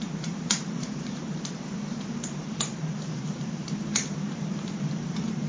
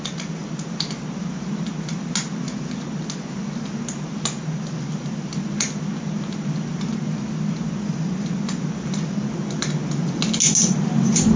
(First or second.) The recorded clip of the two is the second